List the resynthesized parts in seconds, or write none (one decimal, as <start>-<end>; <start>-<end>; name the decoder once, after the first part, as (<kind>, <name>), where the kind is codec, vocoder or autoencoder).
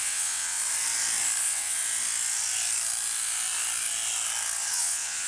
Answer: 0.0-0.6 (vocoder, WaveNeXt); 1.4-1.8; 4.7-5.3